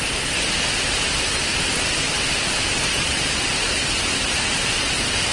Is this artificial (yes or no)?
no